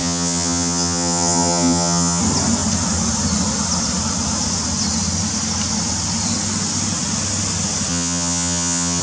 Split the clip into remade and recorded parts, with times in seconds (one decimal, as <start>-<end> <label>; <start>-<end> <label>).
0.0-2.2 remade; 2.2-7.9 recorded; 7.9-9.0 remade